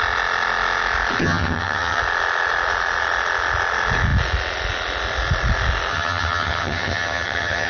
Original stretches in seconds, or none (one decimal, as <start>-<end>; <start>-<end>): 0.0-1.2; 2.0-5.9